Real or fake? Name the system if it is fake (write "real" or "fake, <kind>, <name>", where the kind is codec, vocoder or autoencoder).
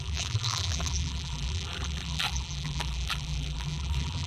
fake, vocoder, BigVGAN v2